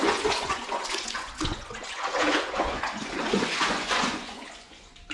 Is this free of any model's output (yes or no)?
no